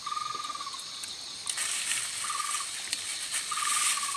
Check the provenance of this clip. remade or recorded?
recorded